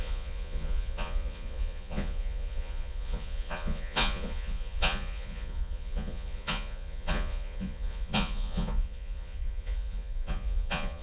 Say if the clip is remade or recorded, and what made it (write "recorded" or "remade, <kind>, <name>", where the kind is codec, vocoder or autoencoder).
remade, vocoder, Vocos